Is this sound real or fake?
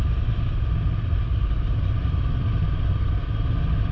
real